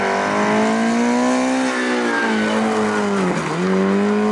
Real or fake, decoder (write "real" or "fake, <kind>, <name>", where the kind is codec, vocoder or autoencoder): real